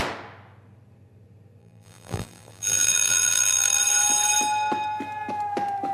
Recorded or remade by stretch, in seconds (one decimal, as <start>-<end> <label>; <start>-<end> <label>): 0.0-1.6 recorded; 1.6-3.8 remade; 3.8-5.9 recorded